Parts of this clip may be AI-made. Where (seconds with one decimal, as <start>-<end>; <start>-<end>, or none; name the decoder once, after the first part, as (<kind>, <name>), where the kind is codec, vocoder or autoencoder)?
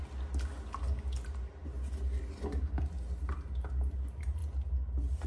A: 3.2-4.4 (vocoder, BigVGAN v2)